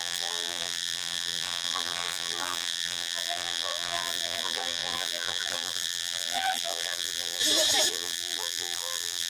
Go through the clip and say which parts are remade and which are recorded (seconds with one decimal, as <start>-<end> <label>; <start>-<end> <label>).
0.0-7.4 remade; 7.4-7.9 recorded; 7.9-9.3 remade